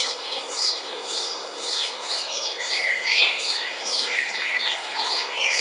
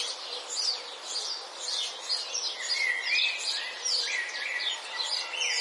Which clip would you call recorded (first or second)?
second